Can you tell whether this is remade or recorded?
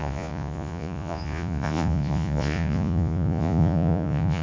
remade